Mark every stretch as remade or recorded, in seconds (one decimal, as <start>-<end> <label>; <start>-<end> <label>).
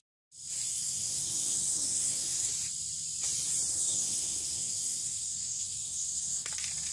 0.0-0.7 recorded; 0.7-2.5 remade; 2.5-3.7 recorded; 3.7-6.5 remade; 6.5-6.9 recorded